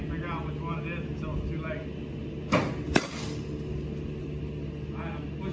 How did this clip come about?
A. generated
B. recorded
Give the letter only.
B